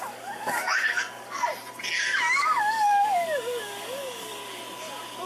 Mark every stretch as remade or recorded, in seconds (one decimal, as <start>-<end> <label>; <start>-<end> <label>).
0.0-1.5 remade; 1.5-2.0 recorded; 2.0-4.4 remade; 4.4-5.3 recorded